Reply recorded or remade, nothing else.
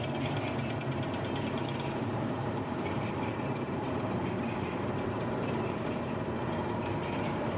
remade